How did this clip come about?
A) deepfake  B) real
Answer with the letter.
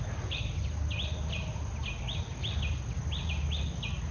B